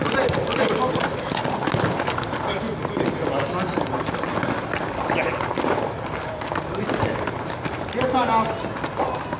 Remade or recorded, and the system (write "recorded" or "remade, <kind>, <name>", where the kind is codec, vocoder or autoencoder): recorded